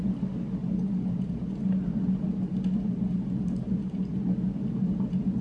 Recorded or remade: recorded